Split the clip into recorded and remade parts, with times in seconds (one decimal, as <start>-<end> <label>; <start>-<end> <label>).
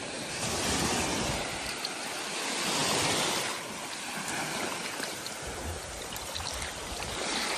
0.0-7.6 recorded